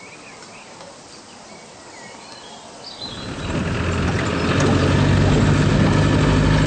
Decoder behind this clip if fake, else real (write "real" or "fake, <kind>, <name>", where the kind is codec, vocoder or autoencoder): real